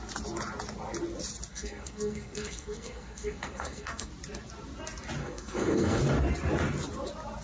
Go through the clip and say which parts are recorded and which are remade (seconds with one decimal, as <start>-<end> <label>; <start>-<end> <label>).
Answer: 0.0-1.5 recorded; 1.5-4.1 remade; 4.1-5.2 recorded; 5.2-6.0 remade; 6.0-7.4 recorded